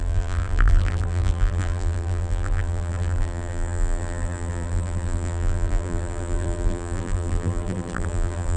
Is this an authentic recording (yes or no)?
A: no